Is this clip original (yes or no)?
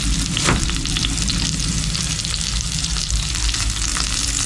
yes